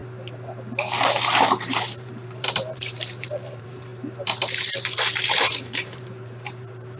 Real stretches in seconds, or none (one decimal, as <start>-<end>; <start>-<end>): 0.0-1.5